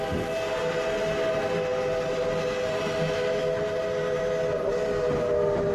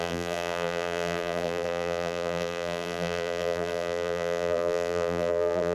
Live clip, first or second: first